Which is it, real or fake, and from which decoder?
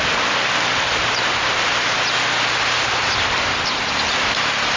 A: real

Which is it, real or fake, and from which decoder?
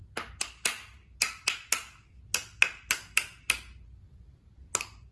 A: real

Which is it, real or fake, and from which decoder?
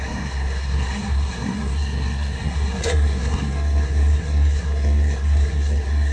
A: fake, codec, SNAC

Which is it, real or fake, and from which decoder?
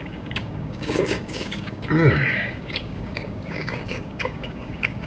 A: fake, codec, DAC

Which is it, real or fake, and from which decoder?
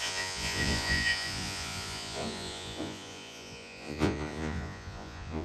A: fake, vocoder, Vocos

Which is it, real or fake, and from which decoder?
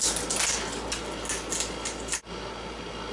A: real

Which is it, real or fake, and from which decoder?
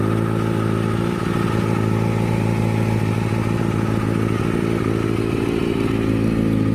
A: real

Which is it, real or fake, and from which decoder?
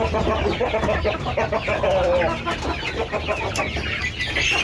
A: real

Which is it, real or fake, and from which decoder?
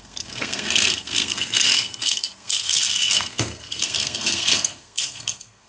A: fake, codec, SNAC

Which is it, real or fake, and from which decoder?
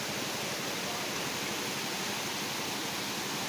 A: real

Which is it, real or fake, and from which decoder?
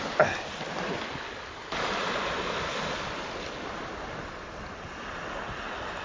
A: real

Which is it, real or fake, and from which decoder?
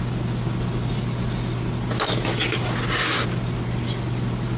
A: real